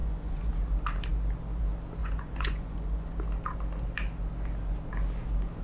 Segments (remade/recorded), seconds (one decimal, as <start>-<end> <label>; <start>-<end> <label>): 0.0-0.5 remade; 0.5-2.0 recorded; 2.0-3.1 remade; 3.1-5.6 recorded